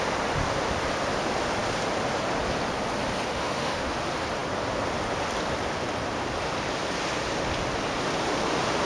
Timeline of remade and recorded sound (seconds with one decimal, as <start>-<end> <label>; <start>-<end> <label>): 0.0-3.3 recorded; 3.3-3.9 remade; 3.9-8.8 recorded